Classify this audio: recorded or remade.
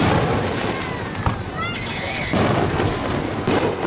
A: recorded